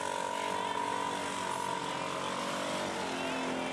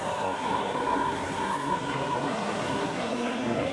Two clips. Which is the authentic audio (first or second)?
first